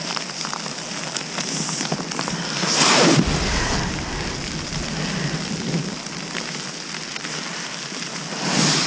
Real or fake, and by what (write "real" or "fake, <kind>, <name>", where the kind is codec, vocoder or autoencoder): real